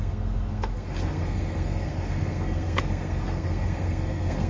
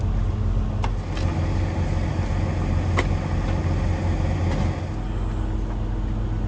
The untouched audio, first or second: second